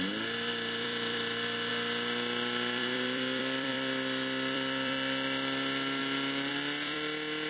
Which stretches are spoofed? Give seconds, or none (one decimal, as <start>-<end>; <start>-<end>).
0.0-6.0; 6.5-7.5